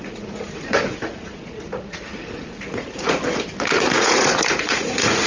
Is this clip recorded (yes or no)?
no